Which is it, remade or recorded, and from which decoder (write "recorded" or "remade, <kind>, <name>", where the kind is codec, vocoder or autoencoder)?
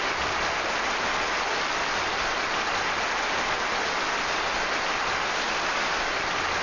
recorded